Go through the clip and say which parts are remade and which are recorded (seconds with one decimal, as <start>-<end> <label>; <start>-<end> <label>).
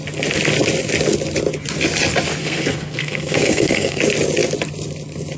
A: 0.0-2.4 recorded; 2.4-4.0 remade; 4.0-5.4 recorded